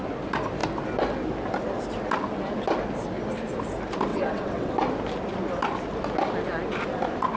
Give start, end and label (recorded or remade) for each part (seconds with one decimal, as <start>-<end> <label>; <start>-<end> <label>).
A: 0.0-4.1 recorded; 4.1-4.7 remade; 4.7-7.4 recorded